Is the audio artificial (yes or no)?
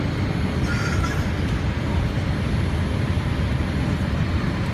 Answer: no